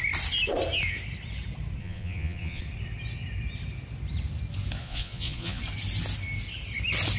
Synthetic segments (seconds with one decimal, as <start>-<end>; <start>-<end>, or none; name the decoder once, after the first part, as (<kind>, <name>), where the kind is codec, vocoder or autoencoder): 1.8-2.6 (vocoder, Vocos); 4.8-5.6